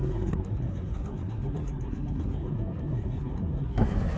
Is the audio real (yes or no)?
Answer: no